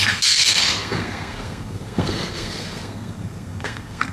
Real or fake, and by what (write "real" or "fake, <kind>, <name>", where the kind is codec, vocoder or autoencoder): fake, codec, SNAC